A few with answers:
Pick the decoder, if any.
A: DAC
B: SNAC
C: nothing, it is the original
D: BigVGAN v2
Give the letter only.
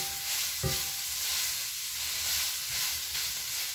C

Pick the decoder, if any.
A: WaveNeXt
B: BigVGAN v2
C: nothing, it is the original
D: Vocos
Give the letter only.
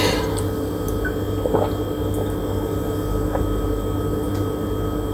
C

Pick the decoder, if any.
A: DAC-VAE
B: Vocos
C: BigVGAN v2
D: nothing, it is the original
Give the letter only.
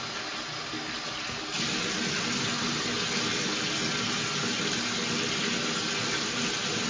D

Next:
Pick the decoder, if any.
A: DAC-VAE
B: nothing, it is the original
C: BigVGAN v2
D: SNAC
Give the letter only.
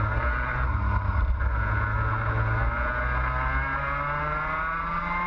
B